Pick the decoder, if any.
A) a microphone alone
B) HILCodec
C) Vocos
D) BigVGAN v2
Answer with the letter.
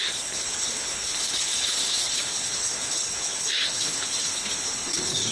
B